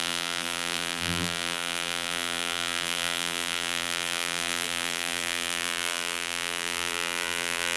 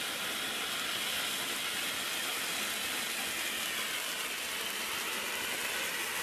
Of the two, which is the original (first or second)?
second